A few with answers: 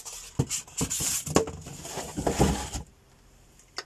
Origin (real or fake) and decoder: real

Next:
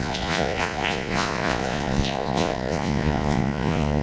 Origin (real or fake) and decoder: fake, vocoder, Vocos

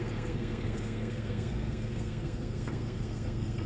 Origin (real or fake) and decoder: fake, codec, SNAC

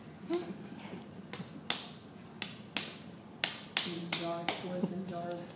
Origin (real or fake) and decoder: real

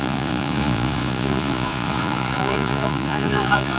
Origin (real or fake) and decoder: fake, vocoder, Vocos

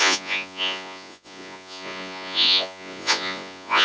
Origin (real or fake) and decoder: fake, vocoder, Vocos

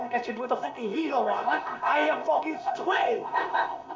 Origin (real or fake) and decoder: fake, codec, ZipCodec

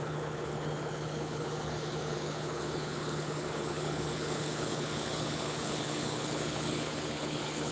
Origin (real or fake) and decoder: fake, codec, HILCodec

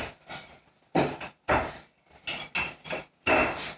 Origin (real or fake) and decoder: real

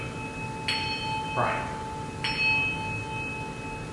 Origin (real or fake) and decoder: real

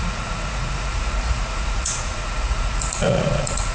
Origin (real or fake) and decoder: fake, vocoder, Vocos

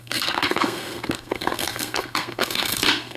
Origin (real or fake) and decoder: fake, codec, SNAC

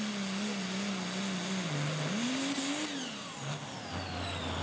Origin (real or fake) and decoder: real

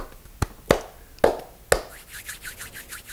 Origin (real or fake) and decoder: real